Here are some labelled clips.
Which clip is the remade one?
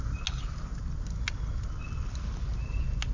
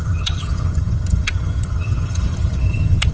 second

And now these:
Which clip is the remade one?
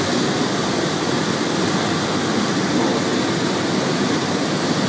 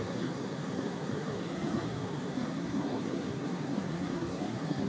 second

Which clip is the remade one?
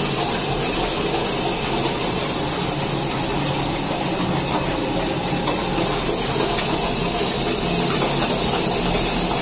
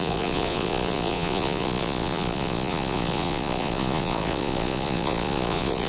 second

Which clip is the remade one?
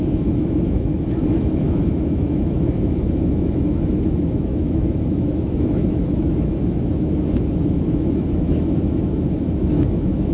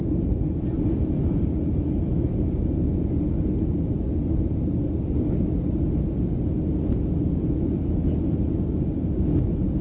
first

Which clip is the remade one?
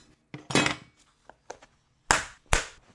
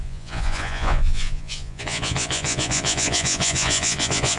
second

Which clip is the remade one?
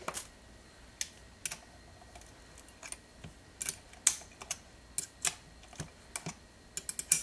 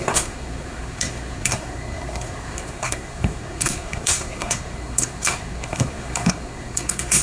second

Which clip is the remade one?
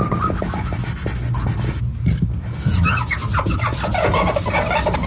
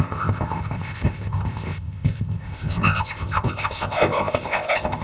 second